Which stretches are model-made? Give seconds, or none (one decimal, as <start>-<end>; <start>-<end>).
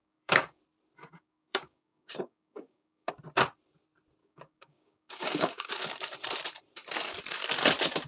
0.0-0.6; 1.0-3.1; 4.2-5.7